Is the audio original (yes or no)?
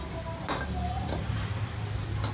yes